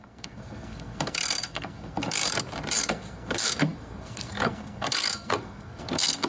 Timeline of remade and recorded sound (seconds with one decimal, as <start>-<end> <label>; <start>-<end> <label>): 0.0-2.2 remade; 2.2-2.9 recorded; 2.9-6.3 remade